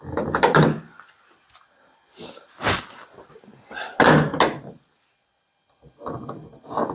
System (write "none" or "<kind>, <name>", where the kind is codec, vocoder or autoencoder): none